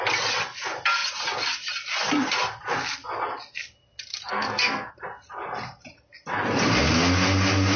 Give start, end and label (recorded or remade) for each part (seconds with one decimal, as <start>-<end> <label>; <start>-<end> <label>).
0.0-4.1 recorded; 4.1-4.9 remade; 4.9-7.8 recorded